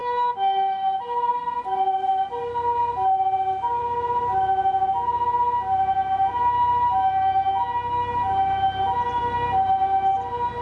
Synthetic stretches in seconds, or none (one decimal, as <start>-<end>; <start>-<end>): none